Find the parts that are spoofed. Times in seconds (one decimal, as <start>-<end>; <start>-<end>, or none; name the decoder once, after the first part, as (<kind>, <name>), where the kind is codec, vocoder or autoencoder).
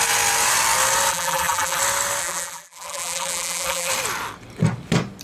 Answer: 1.1-1.8 (vocoder, BigVGAN v2); 2.2-3.9